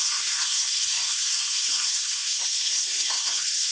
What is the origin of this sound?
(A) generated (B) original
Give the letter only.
A